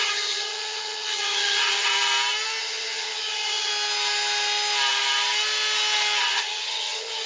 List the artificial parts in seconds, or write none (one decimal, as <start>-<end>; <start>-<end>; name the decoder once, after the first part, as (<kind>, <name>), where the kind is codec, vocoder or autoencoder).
0.0-1.9 (vocoder, HiFi-GAN); 2.6-3.7; 6.2-7.3